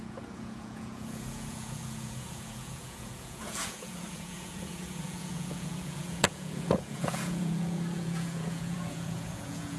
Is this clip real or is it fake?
fake